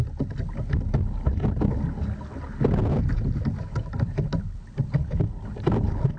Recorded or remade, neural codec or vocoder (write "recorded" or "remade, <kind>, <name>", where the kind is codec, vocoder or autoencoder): recorded